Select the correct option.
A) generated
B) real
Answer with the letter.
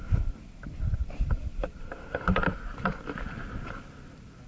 A